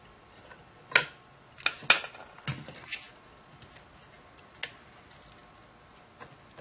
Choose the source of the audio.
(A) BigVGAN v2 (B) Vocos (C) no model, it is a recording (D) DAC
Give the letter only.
C